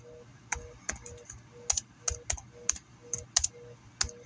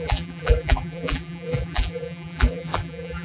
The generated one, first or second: second